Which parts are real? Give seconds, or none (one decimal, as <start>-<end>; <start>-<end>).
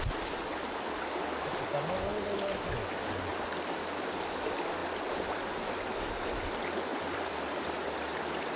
0.0-6.9